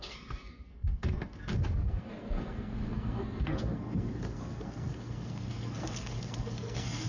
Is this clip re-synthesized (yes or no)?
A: yes